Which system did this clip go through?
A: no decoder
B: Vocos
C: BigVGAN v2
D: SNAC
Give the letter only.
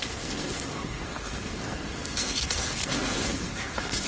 D